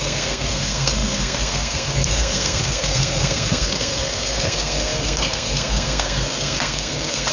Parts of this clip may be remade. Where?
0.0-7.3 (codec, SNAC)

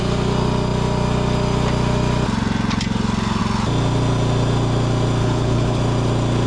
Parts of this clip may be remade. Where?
5.2-5.8 (codec, HILCodec)